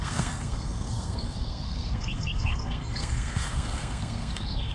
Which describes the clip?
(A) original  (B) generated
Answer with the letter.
B